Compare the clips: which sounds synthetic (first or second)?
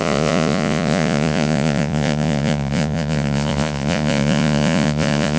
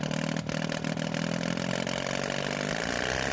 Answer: first